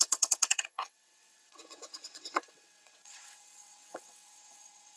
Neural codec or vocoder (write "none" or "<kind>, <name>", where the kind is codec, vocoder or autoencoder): vocoder, WaveNeXt